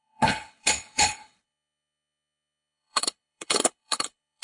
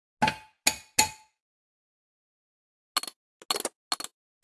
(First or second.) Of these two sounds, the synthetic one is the first